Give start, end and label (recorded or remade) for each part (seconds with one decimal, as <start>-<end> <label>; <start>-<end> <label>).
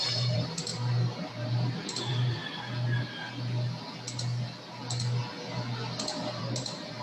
0.0-2.4 remade; 2.4-6.4 recorded; 6.4-7.0 remade